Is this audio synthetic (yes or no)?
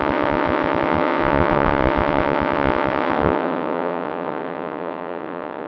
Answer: yes